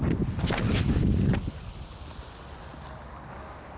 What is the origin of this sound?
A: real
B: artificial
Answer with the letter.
A